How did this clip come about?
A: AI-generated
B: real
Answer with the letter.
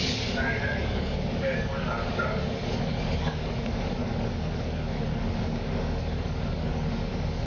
A